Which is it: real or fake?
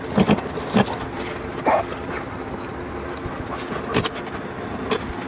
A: real